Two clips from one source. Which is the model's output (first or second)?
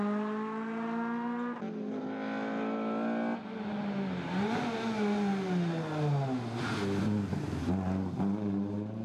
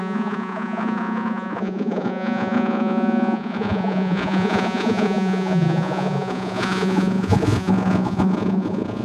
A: second